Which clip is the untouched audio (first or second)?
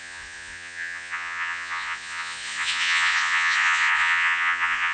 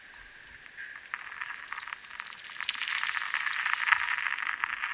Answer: second